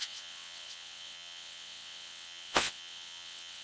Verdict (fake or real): fake